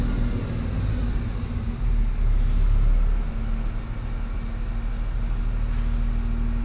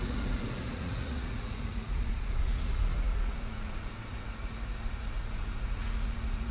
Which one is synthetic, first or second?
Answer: second